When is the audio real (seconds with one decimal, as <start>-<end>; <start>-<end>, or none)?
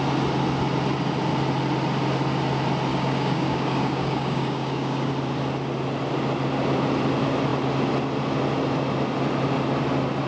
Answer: 0.0-2.9; 5.1-10.3